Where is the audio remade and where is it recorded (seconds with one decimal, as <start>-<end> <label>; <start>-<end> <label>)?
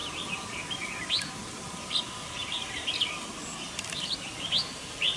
0.0-2.4 recorded; 2.4-3.3 remade; 3.3-5.2 recorded